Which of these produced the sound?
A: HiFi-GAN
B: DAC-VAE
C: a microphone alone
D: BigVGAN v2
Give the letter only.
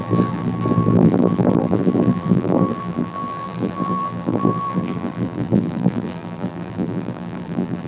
D